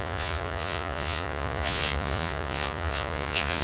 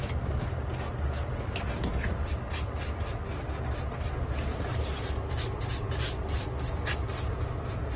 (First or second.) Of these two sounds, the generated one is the first